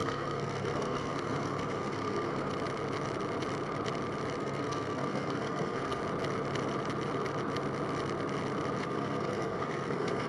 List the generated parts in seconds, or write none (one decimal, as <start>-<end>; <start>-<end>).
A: 0.0-2.5; 4.4-6.0; 8.8-10.3